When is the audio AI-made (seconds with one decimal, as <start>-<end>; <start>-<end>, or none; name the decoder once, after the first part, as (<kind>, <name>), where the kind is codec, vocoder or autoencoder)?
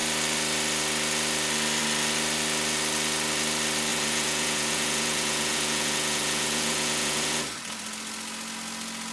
3.9-7.4 (vocoder, Vocos)